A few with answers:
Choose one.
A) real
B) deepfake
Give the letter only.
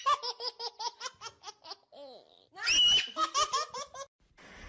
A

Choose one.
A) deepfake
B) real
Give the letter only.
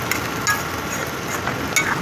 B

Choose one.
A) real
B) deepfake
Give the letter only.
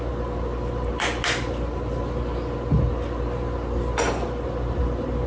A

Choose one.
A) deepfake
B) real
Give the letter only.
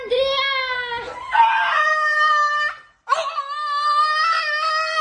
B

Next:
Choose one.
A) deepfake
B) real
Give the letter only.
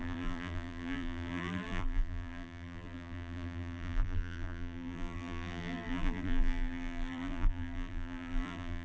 A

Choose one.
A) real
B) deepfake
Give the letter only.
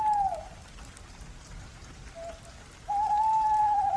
A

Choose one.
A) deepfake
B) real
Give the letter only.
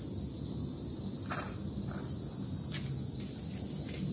B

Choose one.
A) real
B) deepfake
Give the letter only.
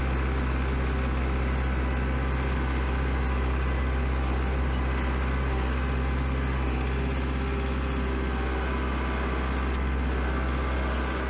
A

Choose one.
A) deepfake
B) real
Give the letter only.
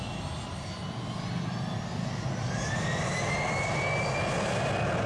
B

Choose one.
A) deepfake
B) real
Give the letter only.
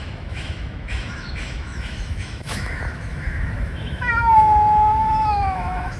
A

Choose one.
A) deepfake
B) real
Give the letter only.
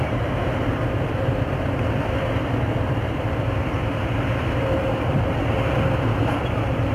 A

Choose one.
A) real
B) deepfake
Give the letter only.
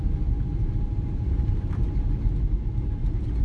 A